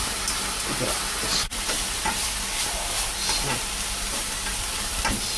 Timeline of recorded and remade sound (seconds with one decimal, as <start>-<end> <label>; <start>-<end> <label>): 0.0-1.5 recorded; 1.5-4.7 remade; 4.7-5.4 recorded